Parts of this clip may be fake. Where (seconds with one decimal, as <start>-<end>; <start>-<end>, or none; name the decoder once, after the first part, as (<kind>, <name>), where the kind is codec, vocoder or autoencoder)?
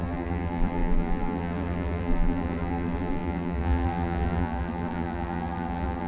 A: 0.0-6.1 (vocoder, BigVGAN v2)